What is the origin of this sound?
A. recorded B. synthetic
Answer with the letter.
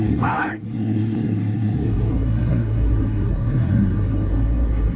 B